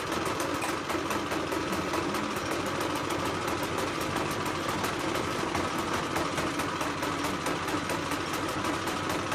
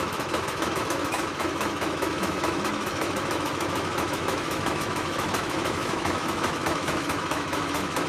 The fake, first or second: second